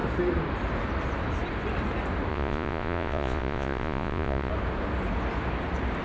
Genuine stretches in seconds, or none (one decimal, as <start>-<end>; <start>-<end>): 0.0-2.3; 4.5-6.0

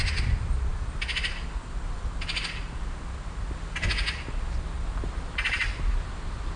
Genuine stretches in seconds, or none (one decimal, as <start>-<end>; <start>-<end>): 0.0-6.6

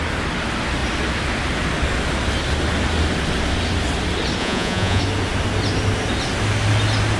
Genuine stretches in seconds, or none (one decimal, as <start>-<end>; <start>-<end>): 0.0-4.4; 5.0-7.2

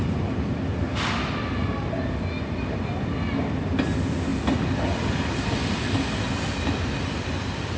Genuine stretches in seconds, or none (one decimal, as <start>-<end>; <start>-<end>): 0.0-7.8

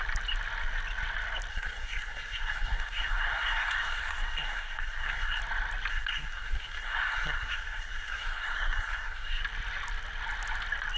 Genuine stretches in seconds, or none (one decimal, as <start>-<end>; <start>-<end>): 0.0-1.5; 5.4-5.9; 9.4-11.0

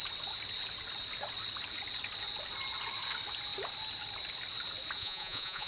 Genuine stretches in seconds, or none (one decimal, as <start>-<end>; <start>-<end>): 0.0-5.0

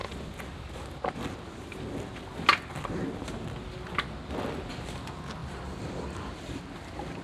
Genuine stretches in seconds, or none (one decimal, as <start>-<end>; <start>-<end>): 0.0-5.4; 6.6-7.2

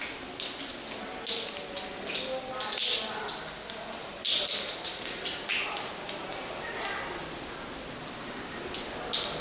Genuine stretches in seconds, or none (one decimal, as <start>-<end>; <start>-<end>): 0.0-4.0; 7.2-9.4